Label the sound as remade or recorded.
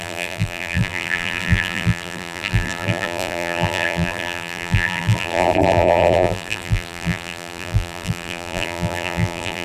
remade